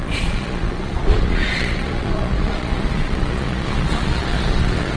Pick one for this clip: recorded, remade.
remade